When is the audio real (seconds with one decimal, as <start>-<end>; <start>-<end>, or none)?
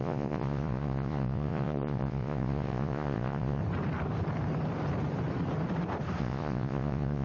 3.6-6.2